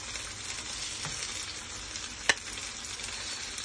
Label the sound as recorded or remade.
recorded